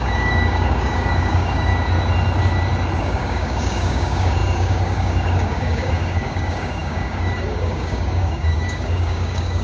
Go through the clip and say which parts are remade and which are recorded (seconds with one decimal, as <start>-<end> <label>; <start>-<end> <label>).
0.0-1.7 remade; 1.7-3.0 recorded; 3.0-9.6 remade